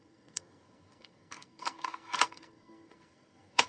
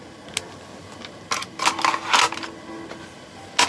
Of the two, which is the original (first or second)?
second